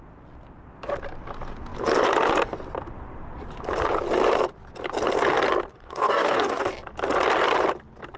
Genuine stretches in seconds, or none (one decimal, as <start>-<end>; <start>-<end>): 0.0-5.7; 6.7-8.2